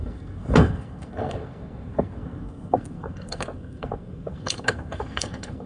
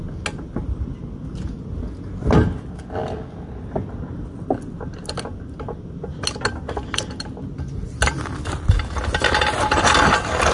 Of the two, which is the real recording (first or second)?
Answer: second